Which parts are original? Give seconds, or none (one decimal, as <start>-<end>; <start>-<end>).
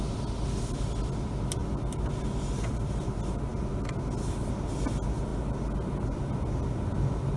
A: 0.0-7.4